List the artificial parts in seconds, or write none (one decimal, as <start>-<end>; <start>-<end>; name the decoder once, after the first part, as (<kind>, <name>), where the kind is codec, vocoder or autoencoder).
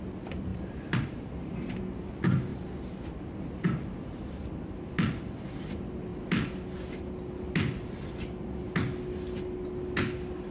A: 0.5-1.3 (vocoder, BigVGAN v2)